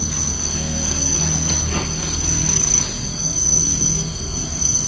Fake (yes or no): yes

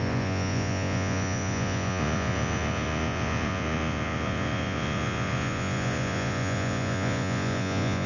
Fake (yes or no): yes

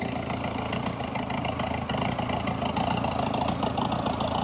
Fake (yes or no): no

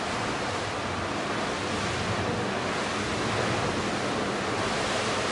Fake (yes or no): no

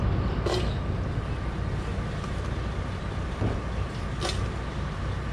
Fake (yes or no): no